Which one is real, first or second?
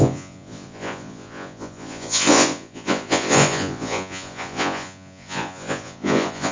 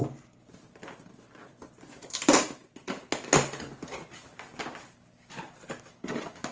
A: second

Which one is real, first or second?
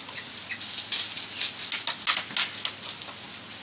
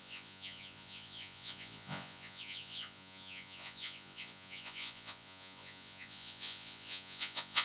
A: first